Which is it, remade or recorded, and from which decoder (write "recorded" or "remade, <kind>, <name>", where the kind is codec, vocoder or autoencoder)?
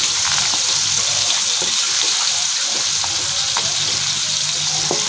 recorded